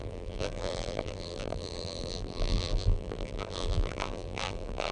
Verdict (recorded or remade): remade